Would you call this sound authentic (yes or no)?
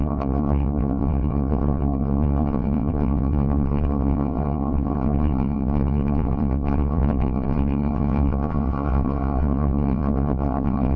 no